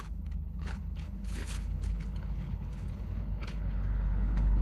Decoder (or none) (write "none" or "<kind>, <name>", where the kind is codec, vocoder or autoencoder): codec, HILCodec